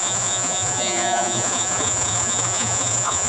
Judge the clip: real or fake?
fake